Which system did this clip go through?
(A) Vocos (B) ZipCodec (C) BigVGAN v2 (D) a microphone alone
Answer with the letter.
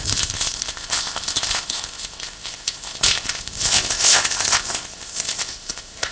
B